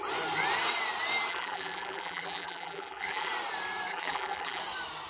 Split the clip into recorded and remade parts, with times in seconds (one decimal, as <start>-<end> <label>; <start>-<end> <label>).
0.0-1.3 recorded; 1.3-3.3 remade; 3.3-3.9 recorded; 3.9-4.6 remade; 4.6-5.1 recorded